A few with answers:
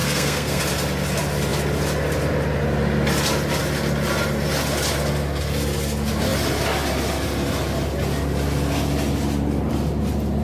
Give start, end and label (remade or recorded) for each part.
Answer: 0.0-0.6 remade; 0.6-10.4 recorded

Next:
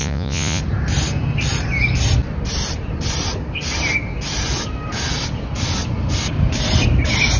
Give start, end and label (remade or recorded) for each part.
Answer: 0.0-0.6 remade; 0.6-7.4 recorded